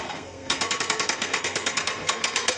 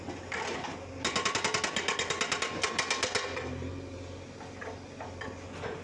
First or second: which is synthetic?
first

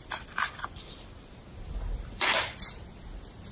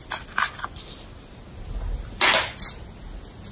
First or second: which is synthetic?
first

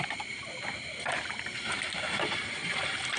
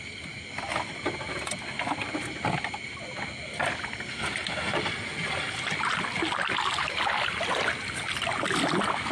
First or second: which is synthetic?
first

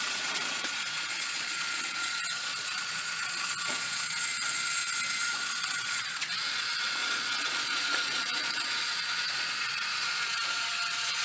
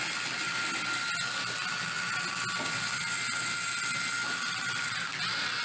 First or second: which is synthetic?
first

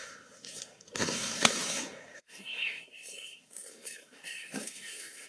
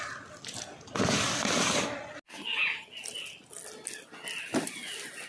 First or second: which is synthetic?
first